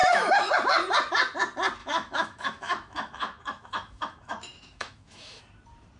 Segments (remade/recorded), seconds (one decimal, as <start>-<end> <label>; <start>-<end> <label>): 0.0-0.5 remade; 0.5-1.8 recorded; 1.8-5.4 remade; 5.4-6.0 recorded